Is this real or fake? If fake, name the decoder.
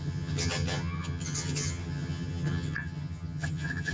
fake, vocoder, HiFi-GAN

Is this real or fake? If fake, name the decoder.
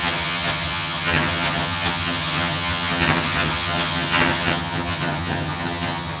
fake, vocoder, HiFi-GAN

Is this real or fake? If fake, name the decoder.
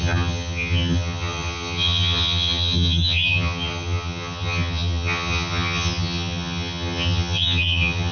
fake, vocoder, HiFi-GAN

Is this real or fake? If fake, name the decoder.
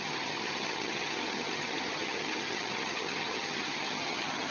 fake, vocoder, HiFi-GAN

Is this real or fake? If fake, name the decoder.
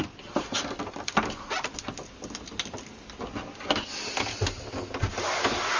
real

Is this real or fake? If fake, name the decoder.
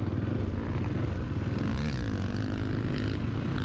real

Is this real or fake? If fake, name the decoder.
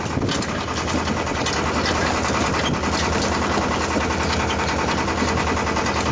real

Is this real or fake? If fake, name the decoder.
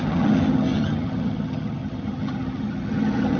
fake, vocoder, HiFi-GAN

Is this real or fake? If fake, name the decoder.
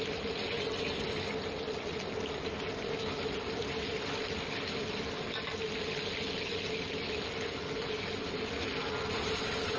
real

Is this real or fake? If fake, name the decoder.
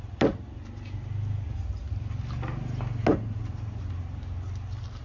real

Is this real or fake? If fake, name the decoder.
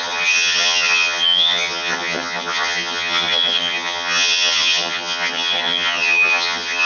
fake, vocoder, HiFi-GAN